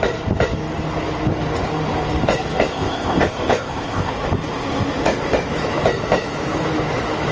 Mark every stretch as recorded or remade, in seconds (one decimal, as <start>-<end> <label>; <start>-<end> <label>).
0.0-2.7 recorded; 2.7-4.1 remade; 4.1-7.3 recorded